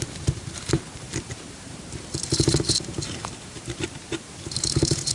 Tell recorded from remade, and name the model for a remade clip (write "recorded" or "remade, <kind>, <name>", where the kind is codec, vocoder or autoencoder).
remade, vocoder, BigVGAN v2